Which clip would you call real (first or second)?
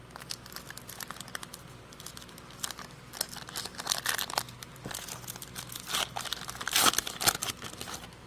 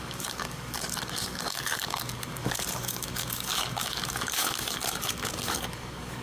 first